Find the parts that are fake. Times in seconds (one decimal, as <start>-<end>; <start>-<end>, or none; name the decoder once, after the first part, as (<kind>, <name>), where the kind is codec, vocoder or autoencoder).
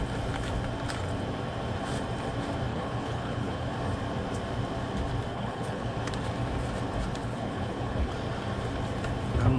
2.7-3.7 (codec, HILCodec); 5.3-6.1; 7.2-8.1